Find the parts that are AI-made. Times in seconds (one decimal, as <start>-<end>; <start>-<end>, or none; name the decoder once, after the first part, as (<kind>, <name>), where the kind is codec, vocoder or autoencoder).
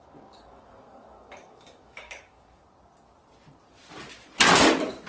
0.0-2.6 (codec, DAC)